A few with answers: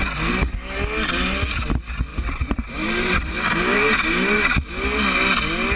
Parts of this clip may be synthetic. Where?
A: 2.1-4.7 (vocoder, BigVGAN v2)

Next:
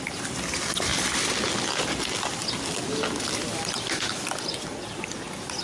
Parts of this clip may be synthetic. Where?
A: none

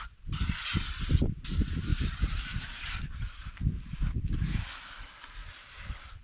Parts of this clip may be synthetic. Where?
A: 1.9-4.2 (vocoder, BigVGAN v2); 5.4-6.2

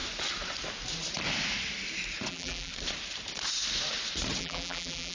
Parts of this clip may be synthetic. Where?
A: 2.3-2.7 (vocoder, BigVGAN v2); 4.4-5.1

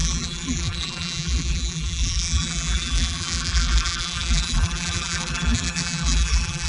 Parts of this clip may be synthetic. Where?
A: 0.0-6.7 (vocoder, BigVGAN v2)

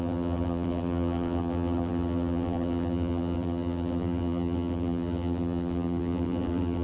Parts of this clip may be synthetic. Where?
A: 0.0-6.8 (vocoder, BigVGAN v2)

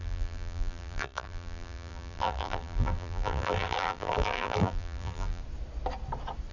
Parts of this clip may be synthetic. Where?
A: 0.0-5.4 (vocoder, BigVGAN v2)